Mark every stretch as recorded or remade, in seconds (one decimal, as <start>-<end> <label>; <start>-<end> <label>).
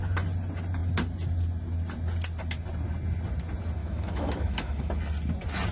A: 0.0-3.8 recorded; 3.8-4.9 remade; 4.9-5.7 recorded